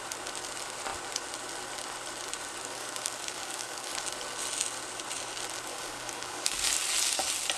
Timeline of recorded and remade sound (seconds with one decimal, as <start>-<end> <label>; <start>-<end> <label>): 0.0-2.6 recorded; 2.6-3.9 remade; 3.9-5.7 recorded; 5.7-6.7 remade; 6.7-7.6 recorded